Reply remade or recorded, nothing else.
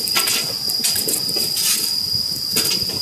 recorded